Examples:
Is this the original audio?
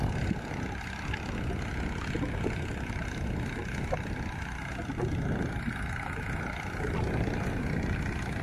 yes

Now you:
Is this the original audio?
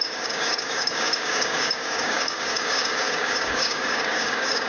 no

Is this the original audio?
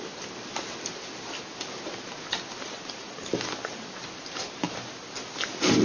yes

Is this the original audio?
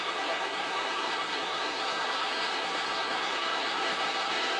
no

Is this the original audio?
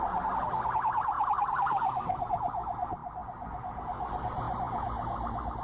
yes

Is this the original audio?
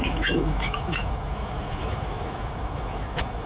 no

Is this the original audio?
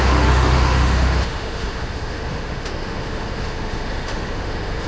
no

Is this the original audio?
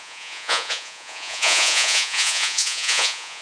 no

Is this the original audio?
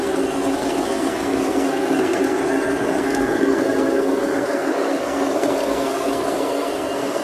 no